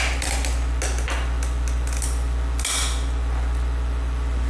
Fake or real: real